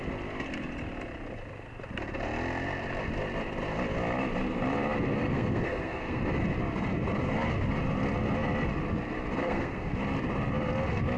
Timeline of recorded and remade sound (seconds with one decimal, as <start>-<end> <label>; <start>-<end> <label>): 0.0-5.2 recorded; 5.2-6.2 remade; 6.2-9.4 recorded; 9.4-9.9 remade; 9.9-11.2 recorded